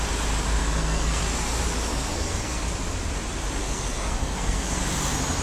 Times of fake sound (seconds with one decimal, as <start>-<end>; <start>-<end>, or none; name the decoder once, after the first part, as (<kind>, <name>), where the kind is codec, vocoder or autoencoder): 0.6-1.2 (codec, SNAC); 1.9-2.7; 3.6-4.8